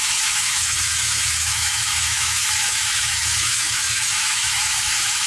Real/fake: fake